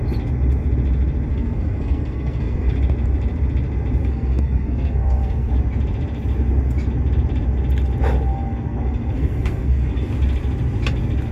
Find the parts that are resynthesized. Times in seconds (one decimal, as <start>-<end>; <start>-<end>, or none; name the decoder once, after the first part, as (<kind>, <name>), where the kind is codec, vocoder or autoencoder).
1.3-2.7 (codec, SNAC); 4.0-5.5; 8.3-10.1